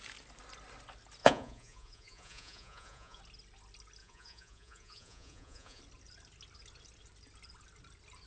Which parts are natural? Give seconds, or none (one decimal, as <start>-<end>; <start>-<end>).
0.0-1.2; 3.2-4.0; 5.8-8.3